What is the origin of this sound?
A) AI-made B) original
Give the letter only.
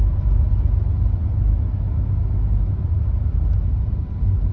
B